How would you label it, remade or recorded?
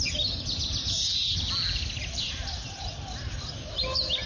recorded